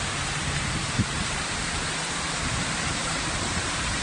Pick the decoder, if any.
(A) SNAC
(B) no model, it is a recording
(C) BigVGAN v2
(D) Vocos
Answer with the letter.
C